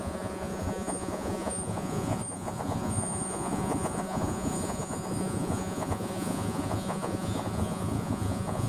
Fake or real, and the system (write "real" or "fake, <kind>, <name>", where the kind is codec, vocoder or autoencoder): fake, vocoder, Vocos